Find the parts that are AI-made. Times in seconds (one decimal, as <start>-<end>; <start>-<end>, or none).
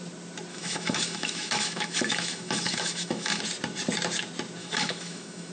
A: 0.5-3.4; 4.6-5.5